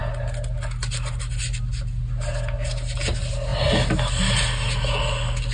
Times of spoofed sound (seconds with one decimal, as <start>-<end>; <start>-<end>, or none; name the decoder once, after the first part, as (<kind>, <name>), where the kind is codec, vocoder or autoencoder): none